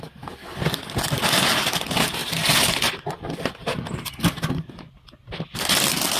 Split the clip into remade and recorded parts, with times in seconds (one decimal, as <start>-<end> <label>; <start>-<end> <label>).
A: 0.0-6.2 recorded